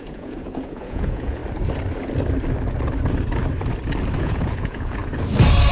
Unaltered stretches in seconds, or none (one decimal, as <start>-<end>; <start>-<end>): 1.4-4.2; 5.0-5.7